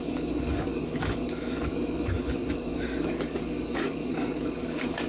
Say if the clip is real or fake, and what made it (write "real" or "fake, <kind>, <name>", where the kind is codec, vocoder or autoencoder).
fake, codec, DAC